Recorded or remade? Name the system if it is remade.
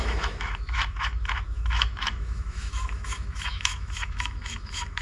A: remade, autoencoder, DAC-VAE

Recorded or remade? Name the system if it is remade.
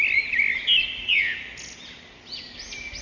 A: recorded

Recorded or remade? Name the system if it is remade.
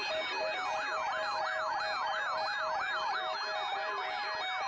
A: recorded